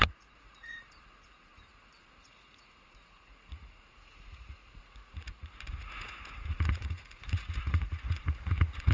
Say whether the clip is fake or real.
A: fake